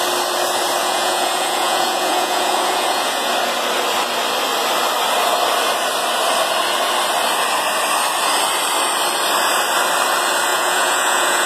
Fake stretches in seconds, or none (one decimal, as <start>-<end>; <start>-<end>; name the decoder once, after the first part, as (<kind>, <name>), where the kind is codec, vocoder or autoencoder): 0.8-3.3 (vocoder, Vocos); 10.5-11.5